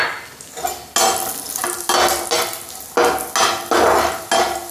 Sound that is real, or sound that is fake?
real